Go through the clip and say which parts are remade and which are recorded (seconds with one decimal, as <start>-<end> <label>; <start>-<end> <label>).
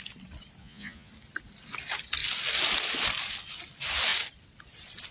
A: 0.0-0.6 recorded; 0.6-1.1 remade; 1.1-5.1 recorded